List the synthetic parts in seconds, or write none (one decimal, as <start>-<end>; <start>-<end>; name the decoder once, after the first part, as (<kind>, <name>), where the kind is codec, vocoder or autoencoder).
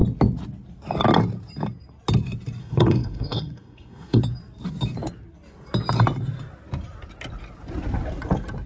2.6-4.2 (codec, SNAC)